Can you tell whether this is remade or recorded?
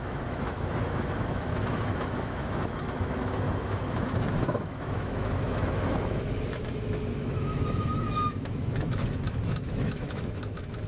remade